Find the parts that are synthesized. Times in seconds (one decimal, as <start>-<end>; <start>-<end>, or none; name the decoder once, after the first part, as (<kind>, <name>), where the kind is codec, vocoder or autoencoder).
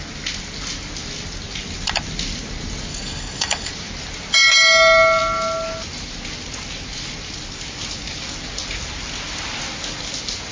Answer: 2.9-3.7 (codec, DAC)